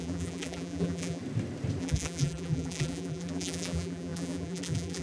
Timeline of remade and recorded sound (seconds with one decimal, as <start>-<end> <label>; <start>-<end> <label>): 0.0-1.2 remade; 1.2-1.8 recorded; 1.8-5.0 remade